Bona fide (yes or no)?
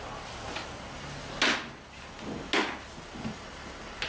yes